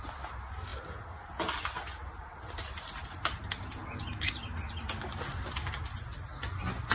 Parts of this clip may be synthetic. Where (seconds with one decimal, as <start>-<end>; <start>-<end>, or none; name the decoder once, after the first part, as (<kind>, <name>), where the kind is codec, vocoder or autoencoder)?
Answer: none